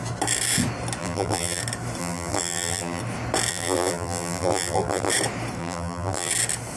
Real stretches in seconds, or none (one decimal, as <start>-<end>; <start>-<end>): 0.0-1.0; 1.6-2.0; 3.0-3.5; 5.1-5.6; 6.3-6.8